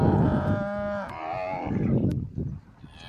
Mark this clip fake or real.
real